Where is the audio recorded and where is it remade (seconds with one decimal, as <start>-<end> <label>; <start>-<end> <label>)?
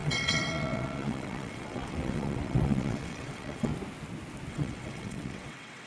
0.0-3.7 remade; 3.7-4.5 recorded; 4.5-5.9 remade